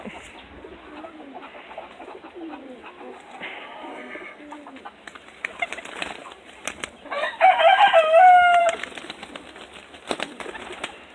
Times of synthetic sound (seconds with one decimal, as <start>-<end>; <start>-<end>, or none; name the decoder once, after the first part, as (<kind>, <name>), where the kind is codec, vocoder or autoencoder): 3.9-4.4 (codec, SNAC)